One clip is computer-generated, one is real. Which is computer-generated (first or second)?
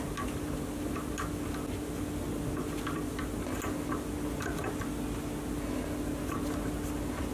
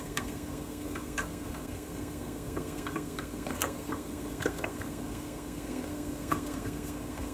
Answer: second